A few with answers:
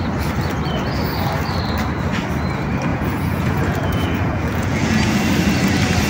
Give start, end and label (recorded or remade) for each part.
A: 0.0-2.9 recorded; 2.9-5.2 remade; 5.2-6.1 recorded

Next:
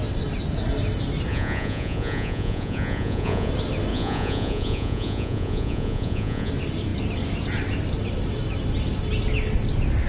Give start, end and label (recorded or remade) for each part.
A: 0.0-1.3 recorded; 1.3-3.5 remade; 3.5-3.9 recorded; 3.9-6.5 remade; 6.5-10.1 recorded